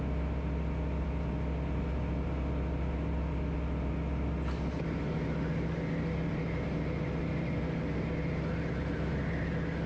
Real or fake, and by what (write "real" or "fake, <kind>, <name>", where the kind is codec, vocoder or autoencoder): real